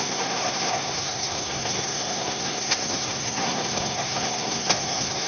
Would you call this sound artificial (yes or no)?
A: yes